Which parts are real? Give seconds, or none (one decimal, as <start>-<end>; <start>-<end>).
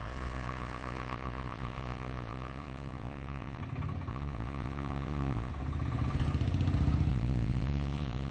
3.6-4.1; 5.5-7.1